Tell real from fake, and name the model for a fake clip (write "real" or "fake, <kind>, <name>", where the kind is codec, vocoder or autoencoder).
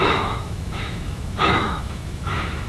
fake, autoencoder, DAC-VAE